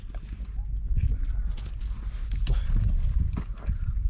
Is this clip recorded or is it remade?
recorded